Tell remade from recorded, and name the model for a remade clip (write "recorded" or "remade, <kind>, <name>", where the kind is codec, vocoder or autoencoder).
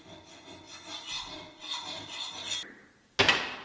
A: recorded